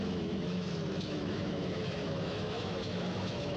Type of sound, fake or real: fake